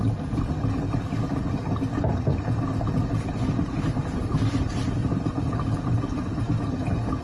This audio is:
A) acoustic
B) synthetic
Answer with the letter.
B